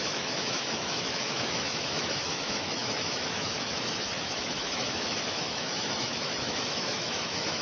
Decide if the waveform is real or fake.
fake